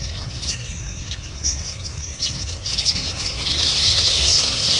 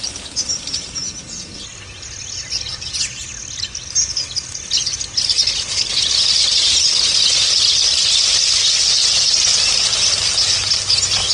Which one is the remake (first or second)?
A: first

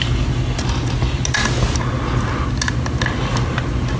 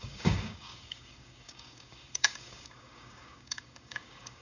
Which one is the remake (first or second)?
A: second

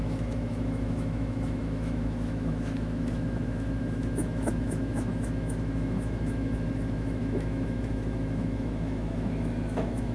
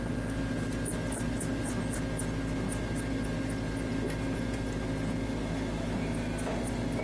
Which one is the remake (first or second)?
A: first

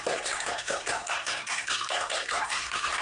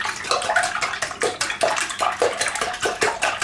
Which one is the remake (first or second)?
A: first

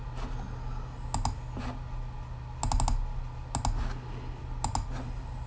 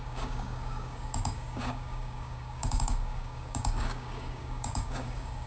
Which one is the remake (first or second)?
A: second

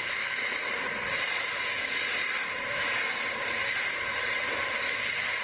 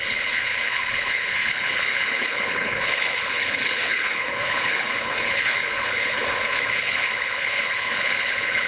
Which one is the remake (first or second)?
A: second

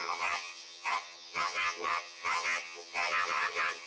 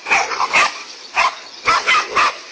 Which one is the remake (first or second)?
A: first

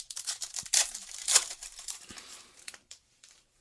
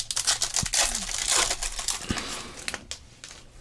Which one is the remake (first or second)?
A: first